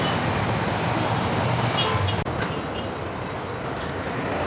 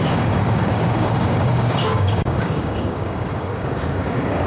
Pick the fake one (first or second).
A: second